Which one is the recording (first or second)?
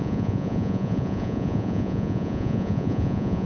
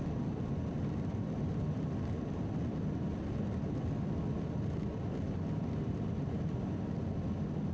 second